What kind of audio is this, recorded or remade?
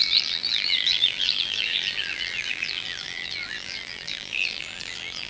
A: remade